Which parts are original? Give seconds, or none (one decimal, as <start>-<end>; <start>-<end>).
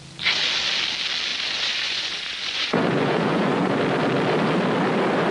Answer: 0.0-1.3; 3.8-5.3